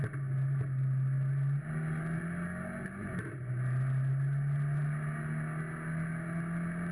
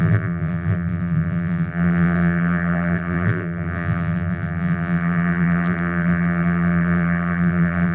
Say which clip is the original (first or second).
first